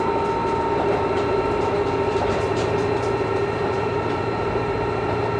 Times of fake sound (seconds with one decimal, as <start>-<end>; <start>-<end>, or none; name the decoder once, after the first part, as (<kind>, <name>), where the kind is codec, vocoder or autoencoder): 0.4-1.6 (vocoder, BigVGAN v2); 2.1-2.6; 3.3-5.4

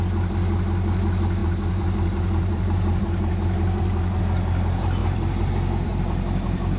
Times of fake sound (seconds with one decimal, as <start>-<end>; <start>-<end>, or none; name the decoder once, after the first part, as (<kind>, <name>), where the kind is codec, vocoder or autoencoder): 1.4-4.2 (vocoder, BigVGAN v2); 5.0-5.5; 5.9-6.8